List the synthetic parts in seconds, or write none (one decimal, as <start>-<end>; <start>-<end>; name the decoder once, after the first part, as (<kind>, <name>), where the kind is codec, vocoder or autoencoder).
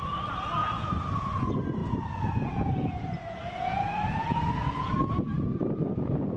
0.6-1.3 (vocoder, Vocos); 1.8-4.9